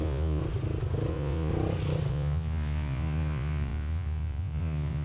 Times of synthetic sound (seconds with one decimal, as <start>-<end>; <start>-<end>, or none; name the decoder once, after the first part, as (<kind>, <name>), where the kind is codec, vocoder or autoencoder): 0.0-0.4 (vocoder, Vocos); 1.1-1.5; 2.1-5.0